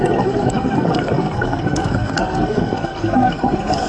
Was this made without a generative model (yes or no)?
no